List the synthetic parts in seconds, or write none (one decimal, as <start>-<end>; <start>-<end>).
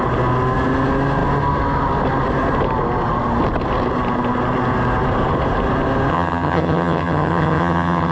6.1-8.1